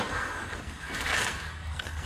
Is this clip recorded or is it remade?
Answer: remade